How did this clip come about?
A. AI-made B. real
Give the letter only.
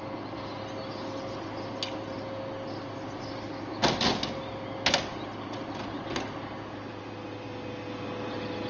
B